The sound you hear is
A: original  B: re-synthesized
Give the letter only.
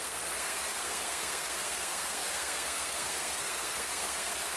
B